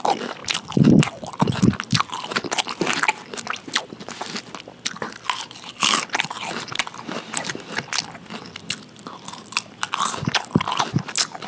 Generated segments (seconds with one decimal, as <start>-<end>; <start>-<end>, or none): none